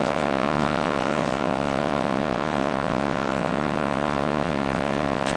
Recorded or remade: remade